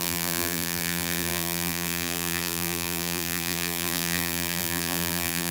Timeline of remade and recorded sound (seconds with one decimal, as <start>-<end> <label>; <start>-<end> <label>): 0.0-5.5 remade